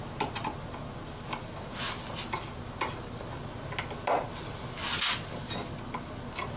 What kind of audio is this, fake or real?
real